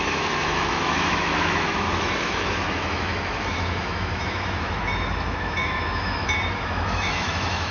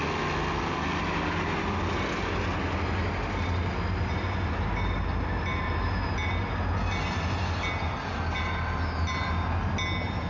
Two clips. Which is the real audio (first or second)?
second